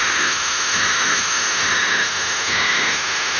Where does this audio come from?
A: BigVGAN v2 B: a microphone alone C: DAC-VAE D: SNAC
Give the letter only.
C